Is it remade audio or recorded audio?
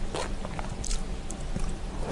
recorded